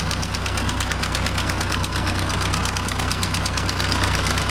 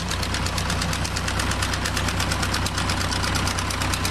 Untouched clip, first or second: second